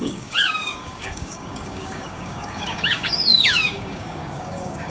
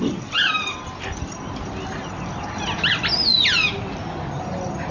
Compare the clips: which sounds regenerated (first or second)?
first